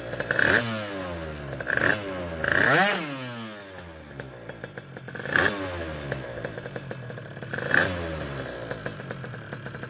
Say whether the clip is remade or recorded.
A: recorded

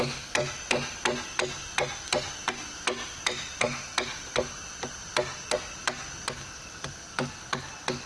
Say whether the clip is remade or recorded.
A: recorded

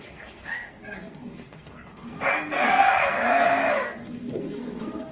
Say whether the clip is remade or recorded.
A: remade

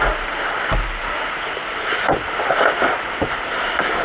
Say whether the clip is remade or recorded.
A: recorded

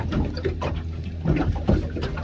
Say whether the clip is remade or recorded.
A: recorded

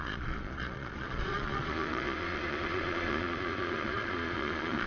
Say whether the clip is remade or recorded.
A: remade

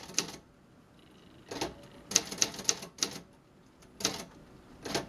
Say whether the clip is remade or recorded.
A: recorded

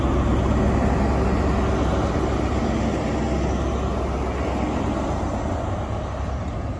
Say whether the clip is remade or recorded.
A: recorded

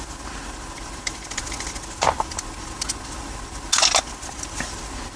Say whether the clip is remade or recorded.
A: recorded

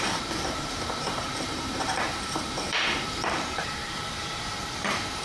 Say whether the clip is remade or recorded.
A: remade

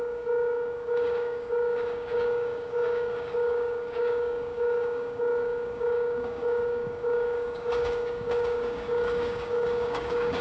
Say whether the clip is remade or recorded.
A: remade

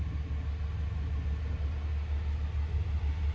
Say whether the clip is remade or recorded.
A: recorded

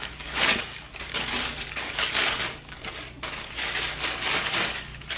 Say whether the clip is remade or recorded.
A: remade